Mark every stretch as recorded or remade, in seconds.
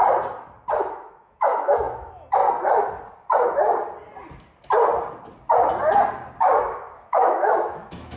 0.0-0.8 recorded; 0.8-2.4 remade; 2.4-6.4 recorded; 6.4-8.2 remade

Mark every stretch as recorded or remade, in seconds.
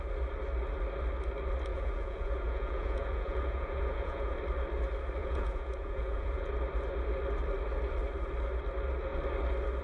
0.0-1.7 recorded; 1.7-4.3 remade; 4.3-5.2 recorded; 5.2-6.5 remade; 6.5-9.8 recorded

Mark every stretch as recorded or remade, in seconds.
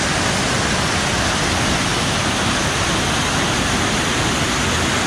0.0-1.9 recorded; 1.9-2.9 remade; 2.9-5.1 recorded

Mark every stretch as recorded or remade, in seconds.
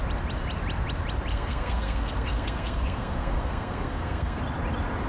0.0-1.3 recorded; 1.3-4.4 remade; 4.4-5.1 recorded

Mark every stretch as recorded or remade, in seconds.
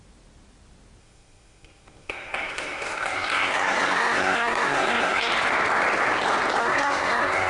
0.0-1.0 recorded; 1.0-5.3 remade; 5.3-6.6 recorded; 6.6-7.5 remade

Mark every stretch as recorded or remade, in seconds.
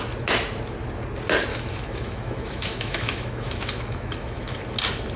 0.0-1.5 recorded; 1.5-4.6 remade; 4.6-5.2 recorded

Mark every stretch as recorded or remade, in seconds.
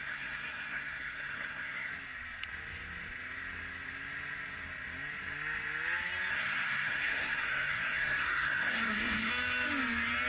0.0-1.9 remade; 1.9-6.3 recorded; 6.3-9.3 remade; 9.3-10.3 recorded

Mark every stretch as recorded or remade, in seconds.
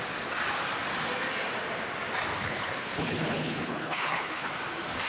0.0-2.4 recorded; 2.4-4.5 remade; 4.5-5.1 recorded